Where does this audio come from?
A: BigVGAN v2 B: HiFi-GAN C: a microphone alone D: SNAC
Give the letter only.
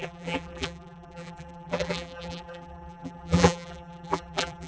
A